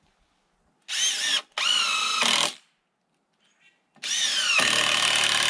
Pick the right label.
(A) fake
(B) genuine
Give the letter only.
B